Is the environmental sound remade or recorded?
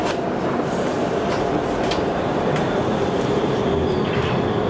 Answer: recorded